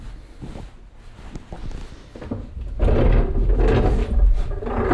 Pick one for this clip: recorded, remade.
recorded